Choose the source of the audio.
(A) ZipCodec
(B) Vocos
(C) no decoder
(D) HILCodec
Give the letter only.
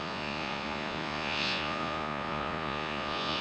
B